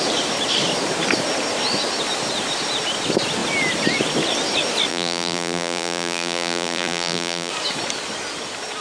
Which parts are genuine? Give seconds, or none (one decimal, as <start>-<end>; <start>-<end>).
0.0-4.9; 7.5-8.8

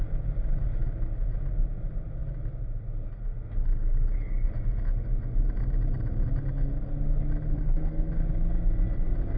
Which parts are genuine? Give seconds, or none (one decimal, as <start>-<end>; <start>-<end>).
0.0-7.5; 8.1-9.4

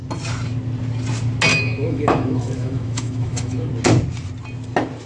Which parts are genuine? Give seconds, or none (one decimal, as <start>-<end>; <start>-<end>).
0.0-1.5; 3.7-5.1